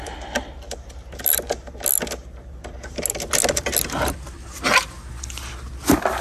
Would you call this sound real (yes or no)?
yes